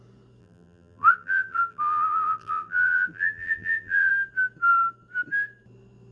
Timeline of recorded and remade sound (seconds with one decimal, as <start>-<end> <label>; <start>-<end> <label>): 0.0-0.4 recorded; 0.4-4.1 remade; 4.1-6.1 recorded